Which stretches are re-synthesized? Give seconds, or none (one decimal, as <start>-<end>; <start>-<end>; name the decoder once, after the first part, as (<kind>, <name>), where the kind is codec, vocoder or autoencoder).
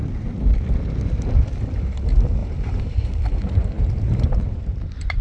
2.4-5.2 (vocoder, BigVGAN v2)